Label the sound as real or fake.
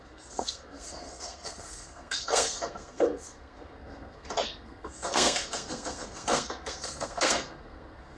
fake